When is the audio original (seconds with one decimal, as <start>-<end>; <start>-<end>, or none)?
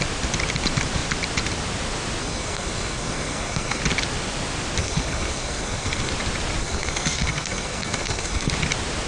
0.0-2.2; 3.8-4.8; 6.1-6.6; 8.5-9.1